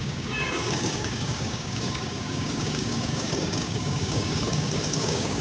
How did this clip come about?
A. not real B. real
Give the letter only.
A